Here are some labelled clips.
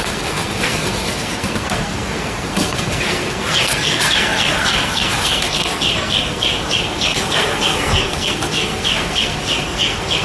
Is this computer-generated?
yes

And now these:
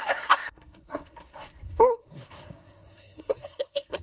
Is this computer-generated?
yes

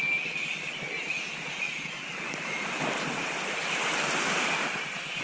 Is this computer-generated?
no